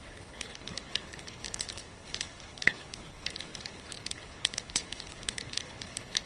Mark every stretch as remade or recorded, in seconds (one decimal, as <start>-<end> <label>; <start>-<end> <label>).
0.0-6.3 remade